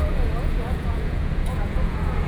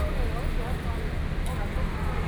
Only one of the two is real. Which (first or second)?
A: second